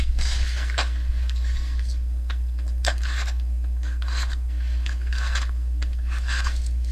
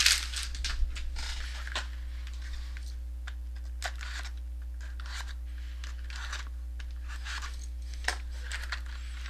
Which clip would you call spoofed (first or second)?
first